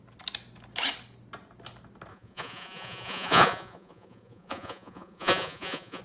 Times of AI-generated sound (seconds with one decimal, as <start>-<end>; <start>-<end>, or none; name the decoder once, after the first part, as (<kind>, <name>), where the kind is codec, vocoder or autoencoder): 2.1-6.0 (vocoder, Vocos)